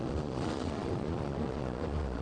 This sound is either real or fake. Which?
fake